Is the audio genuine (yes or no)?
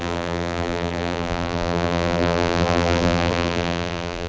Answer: no